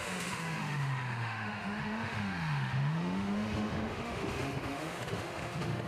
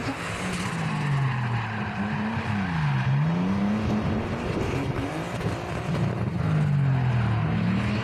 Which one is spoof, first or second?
first